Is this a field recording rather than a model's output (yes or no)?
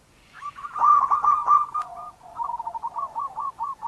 no